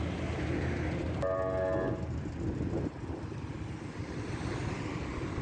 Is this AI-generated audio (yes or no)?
no